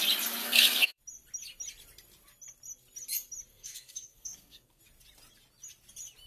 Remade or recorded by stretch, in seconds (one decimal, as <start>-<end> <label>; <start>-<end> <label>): 0.0-0.4 recorded; 0.4-1.0 remade; 1.0-3.5 recorded; 3.5-4.8 remade; 4.8-6.3 recorded